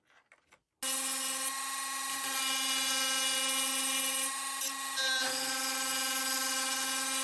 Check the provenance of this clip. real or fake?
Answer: real